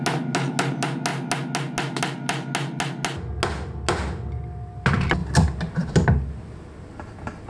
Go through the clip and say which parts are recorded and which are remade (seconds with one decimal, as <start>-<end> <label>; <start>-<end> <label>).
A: 0.0-7.5 recorded